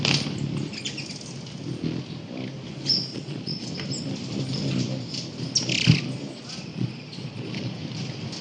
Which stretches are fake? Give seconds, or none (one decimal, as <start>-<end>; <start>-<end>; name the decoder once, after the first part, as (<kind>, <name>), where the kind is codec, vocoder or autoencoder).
3.1-3.7 (vocoder, Vocos); 6.7-7.8